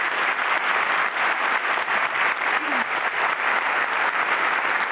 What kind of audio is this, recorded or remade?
recorded